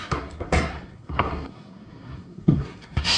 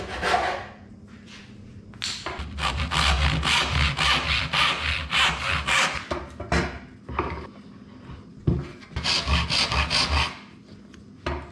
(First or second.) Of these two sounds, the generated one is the first